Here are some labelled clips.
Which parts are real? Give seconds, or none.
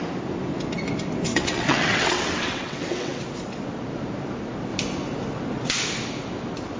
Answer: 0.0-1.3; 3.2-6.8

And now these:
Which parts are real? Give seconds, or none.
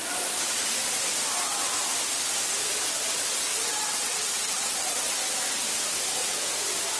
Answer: 0.0-3.5; 5.1-7.0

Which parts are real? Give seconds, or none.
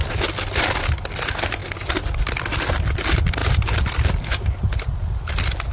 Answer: 0.0-5.7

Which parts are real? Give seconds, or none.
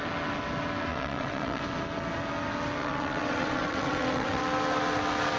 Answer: 0.0-0.9; 1.6-2.8; 4.4-5.4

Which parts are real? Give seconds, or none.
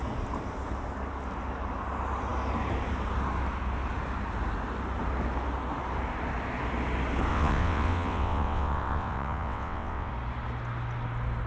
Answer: 0.0-7.3; 10.1-11.5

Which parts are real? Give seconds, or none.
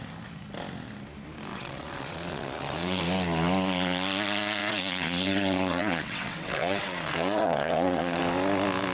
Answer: 0.0-1.5; 3.0-4.6; 8.2-8.9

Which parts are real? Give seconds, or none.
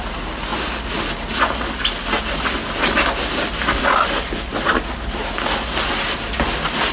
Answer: 0.0-6.9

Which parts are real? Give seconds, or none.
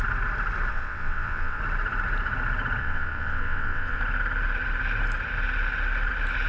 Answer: 0.0-0.7; 1.6-2.8; 4.0-6.5